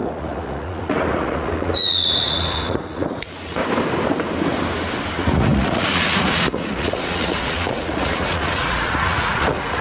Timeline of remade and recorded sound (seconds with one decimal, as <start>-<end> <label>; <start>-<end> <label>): 0.0-3.6 remade; 3.6-5.1 recorded; 5.1-9.8 remade